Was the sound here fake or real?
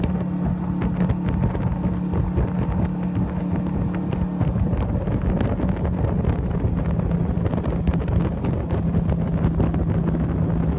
real